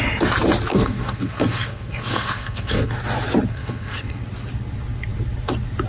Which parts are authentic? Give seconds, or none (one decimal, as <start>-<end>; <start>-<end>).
0.0-0.7; 2.9-3.5; 4.2-5.9